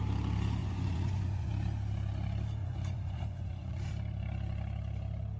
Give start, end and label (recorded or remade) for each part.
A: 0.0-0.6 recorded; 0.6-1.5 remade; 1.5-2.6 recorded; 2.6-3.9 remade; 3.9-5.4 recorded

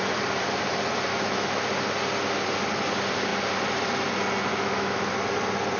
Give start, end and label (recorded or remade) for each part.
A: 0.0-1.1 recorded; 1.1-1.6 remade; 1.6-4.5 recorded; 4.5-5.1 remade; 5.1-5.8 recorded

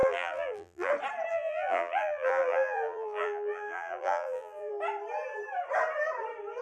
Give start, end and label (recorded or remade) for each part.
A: 0.0-0.9 remade; 0.9-1.3 recorded; 1.3-4.7 remade; 4.7-6.6 recorded

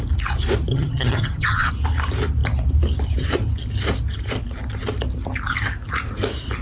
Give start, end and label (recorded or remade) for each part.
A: 0.0-0.7 recorded; 0.7-1.7 remade; 1.7-6.6 recorded

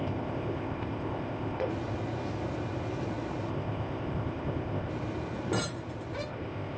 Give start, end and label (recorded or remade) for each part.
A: 0.0-1.7 remade; 1.7-3.5 recorded; 3.5-4.9 remade; 4.9-6.3 recorded; 6.3-6.8 remade

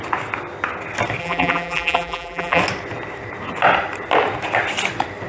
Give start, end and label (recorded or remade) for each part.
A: 0.0-1.2 recorded; 1.2-2.6 remade; 2.6-5.3 recorded

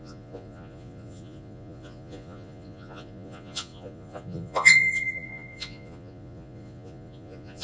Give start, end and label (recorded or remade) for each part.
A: 0.0-7.6 remade